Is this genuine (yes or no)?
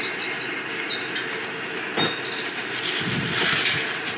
yes